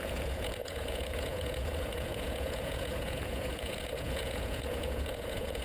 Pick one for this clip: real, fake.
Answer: fake